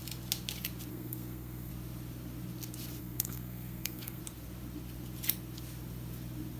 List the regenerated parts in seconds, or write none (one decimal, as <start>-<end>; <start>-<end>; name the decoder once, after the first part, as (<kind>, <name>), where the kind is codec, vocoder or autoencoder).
0.9-1.7 (codec, SNAC); 3.0-4.2